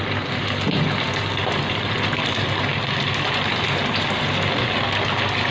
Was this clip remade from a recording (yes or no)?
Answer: no